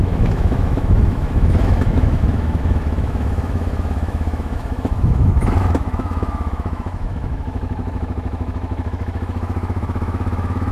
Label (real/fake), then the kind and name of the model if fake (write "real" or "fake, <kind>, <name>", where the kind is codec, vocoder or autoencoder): fake, autoencoder, DAC-VAE